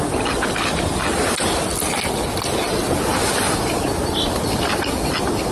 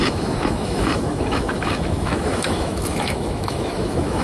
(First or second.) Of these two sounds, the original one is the first